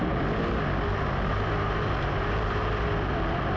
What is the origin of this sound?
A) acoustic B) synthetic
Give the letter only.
A